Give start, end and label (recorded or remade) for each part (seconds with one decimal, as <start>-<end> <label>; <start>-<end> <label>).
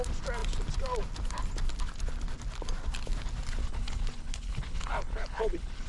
0.0-3.6 recorded; 3.6-5.9 remade